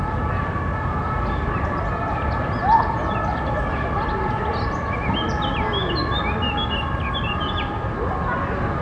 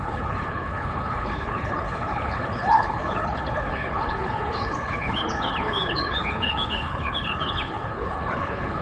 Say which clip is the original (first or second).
first